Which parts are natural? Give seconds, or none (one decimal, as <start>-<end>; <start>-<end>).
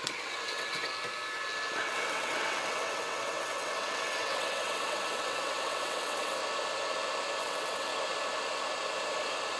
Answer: 0.9-1.8; 6.4-7.4; 7.9-9.6